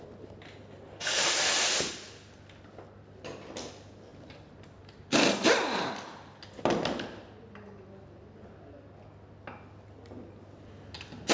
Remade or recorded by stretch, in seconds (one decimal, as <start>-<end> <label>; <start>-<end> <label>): 0.0-1.1 recorded; 1.1-1.9 remade; 1.9-4.1 recorded; 4.1-5.9 remade; 5.9-11.3 recorded